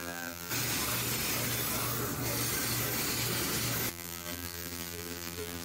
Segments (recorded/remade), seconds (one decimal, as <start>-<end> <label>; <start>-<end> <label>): 0.0-0.5 remade; 0.5-3.9 recorded; 3.9-5.6 remade